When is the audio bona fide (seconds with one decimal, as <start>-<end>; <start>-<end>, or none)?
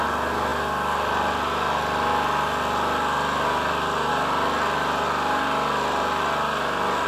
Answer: 0.0-7.1